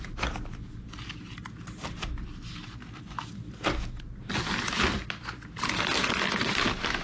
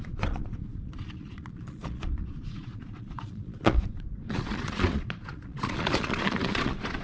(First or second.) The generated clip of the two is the second